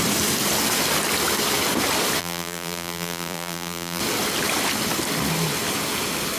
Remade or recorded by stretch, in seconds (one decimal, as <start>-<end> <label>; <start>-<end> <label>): 0.0-2.2 recorded; 2.2-4.0 remade; 4.0-6.4 recorded